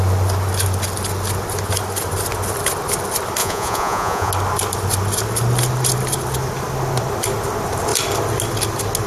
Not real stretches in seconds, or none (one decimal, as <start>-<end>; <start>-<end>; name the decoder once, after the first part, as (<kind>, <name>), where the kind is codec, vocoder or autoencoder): 3.4-4.3 (vocoder, Vocos)